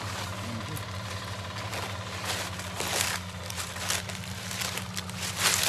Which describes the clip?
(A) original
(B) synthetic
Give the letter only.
A